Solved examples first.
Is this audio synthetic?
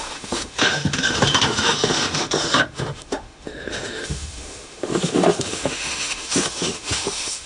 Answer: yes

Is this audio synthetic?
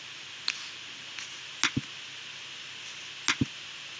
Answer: no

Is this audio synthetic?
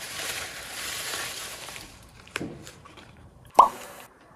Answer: yes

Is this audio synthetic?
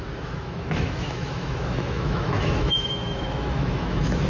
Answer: yes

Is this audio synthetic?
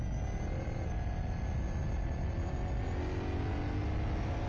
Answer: no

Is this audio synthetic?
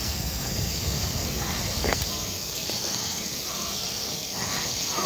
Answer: yes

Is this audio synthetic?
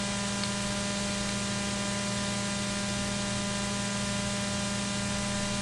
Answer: no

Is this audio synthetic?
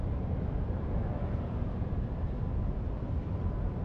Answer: no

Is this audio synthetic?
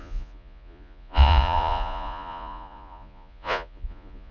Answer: yes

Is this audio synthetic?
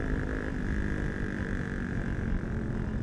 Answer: yes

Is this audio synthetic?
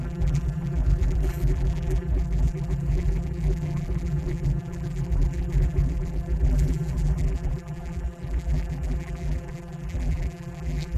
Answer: yes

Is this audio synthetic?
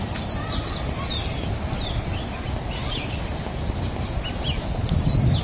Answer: no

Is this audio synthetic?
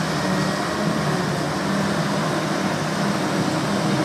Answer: no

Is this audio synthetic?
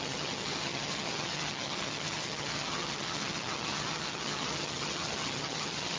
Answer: yes